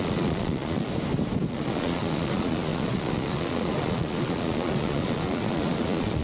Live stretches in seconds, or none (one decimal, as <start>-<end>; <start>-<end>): 0.9-1.5

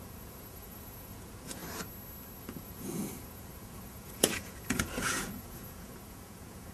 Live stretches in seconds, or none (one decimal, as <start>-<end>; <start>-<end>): 1.6-2.4

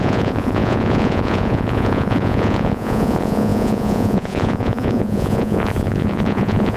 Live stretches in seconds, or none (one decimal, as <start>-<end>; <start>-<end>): none

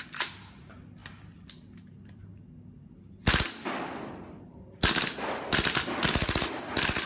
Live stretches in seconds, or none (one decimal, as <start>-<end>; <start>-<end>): 0.0-7.1

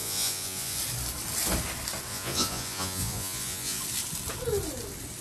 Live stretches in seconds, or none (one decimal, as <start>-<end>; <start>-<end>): 0.8-2.1; 3.8-5.2

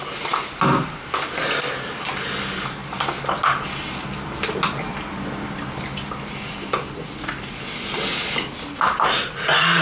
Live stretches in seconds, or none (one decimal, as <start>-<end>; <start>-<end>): 0.0-9.8